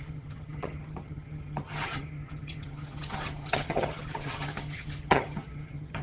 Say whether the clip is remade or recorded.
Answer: remade